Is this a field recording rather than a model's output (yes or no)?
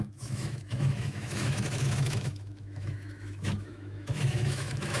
no